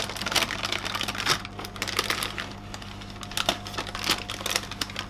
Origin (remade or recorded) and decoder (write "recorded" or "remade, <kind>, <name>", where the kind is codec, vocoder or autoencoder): recorded